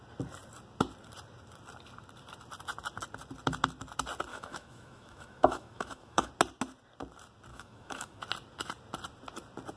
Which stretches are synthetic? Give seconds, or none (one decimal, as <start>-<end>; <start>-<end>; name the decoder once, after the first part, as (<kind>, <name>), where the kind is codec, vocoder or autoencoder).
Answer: 4.3-6.3 (autoencoder, DAC-VAE); 7.5-8.2